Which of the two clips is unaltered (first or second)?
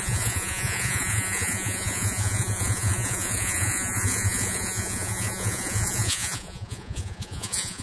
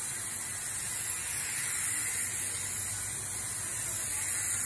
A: second